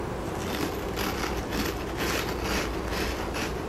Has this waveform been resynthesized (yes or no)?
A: no